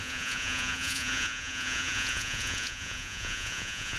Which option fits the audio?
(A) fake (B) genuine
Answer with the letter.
A